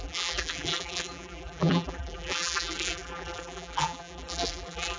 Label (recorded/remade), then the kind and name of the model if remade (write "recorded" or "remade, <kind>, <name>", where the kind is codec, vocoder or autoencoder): remade, vocoder, BigVGAN v2